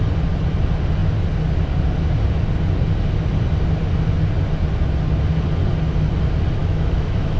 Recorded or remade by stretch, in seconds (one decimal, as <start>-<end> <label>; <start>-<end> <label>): 0.0-6.6 recorded; 6.6-7.4 remade